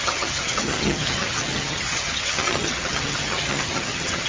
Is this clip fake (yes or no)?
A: yes